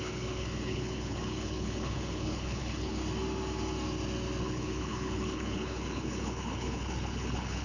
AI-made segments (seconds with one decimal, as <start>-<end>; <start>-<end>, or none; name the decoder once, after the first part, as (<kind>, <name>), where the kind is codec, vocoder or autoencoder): 0.0-3.0 (codec, HILCodec); 4.4-7.6